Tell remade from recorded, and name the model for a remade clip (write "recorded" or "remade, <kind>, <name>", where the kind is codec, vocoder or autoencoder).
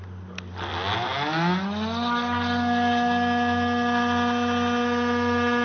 recorded